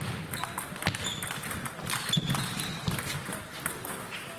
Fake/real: real